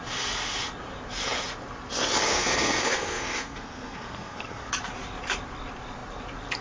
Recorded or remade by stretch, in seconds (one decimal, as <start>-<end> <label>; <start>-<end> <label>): 0.0-2.3 recorded; 2.3-4.7 remade; 4.7-6.6 recorded